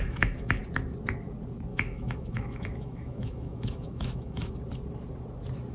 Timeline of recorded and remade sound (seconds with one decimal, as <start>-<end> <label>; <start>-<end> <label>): 0.0-0.6 remade; 0.6-1.7 recorded; 1.7-4.5 remade; 4.5-5.7 recorded